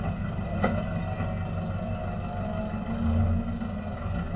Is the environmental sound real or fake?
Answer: real